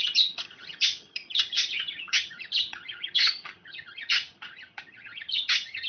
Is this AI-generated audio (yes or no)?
yes